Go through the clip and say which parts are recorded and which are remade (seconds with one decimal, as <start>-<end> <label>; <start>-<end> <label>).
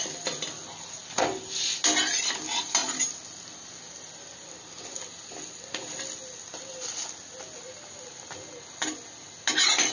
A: 0.0-9.9 recorded